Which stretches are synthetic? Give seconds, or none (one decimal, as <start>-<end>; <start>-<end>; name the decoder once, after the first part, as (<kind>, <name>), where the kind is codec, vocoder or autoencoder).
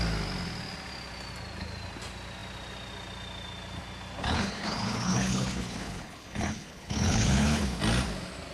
4.2-7.8 (codec, HILCodec)